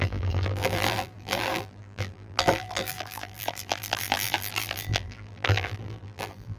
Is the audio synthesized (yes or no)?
yes